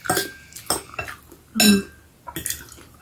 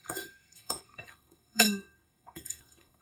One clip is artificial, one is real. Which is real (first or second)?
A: first